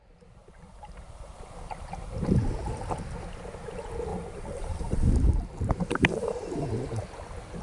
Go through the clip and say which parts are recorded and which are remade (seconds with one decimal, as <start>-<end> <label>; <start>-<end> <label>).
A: 0.0-0.4 recorded; 0.4-2.4 remade; 2.4-4.1 recorded; 4.1-7.0 remade; 7.0-7.6 recorded